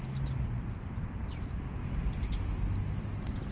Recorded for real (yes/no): yes